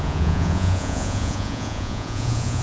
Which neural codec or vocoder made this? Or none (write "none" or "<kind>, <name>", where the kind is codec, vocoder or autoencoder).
vocoder, Vocos